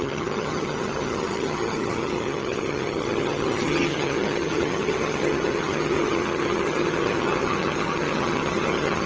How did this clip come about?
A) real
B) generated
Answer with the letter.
B